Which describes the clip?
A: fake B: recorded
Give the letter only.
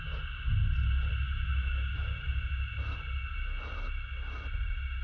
B